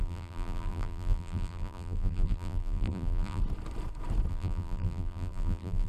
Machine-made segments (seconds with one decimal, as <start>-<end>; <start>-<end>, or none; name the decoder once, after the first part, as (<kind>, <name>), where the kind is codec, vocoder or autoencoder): 0.0-3.4 (vocoder, BigVGAN v2); 4.3-5.9